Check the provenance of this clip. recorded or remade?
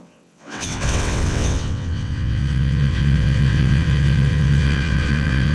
remade